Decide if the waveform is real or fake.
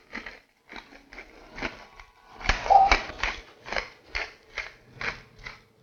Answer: real